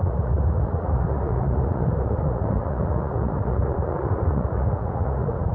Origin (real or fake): fake